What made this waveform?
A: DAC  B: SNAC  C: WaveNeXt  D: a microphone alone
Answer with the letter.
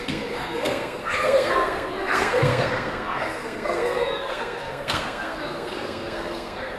B